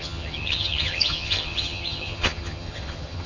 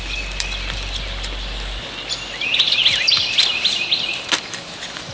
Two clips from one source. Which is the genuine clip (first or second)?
second